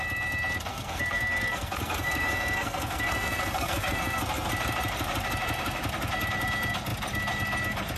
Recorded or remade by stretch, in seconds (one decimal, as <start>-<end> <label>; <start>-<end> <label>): 0.0-0.7 recorded; 0.7-4.5 remade; 4.5-8.0 recorded